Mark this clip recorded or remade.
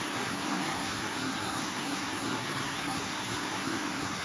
remade